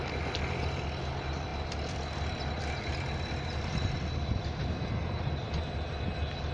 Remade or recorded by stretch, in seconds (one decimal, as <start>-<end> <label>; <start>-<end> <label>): 0.0-6.5 recorded